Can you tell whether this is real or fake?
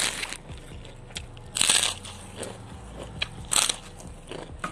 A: real